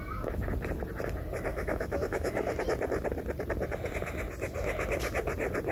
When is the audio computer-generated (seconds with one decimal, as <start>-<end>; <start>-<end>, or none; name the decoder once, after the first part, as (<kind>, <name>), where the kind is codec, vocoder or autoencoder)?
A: 1.5-2.5 (autoencoder, DAC-VAE)